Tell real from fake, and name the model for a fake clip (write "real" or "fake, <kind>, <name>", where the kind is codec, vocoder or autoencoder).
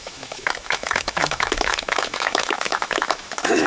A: fake, autoencoder, DAC-VAE